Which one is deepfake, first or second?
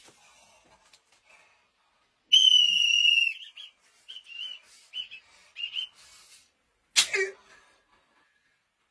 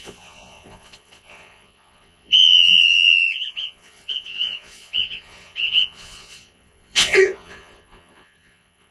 second